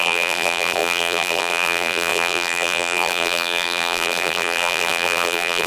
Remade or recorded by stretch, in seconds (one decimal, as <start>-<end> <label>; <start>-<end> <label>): 0.0-5.7 remade